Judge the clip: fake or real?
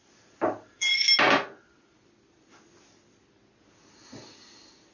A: real